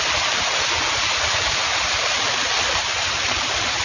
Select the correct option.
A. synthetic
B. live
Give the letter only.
B